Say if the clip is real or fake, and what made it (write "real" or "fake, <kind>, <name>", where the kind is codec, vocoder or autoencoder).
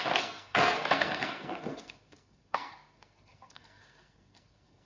fake, codec, SNAC